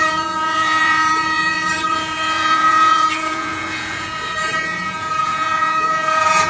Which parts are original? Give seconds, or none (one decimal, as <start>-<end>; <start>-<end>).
none